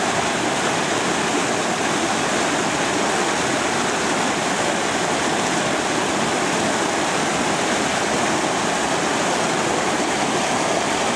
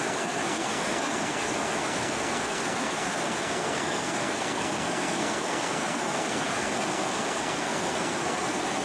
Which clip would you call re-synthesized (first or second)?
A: second